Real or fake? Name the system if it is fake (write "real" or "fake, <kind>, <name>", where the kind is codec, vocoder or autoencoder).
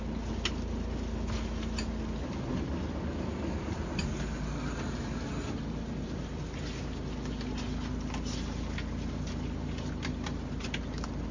real